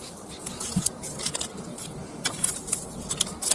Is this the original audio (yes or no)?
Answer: yes